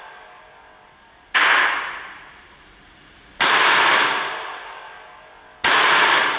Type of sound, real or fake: real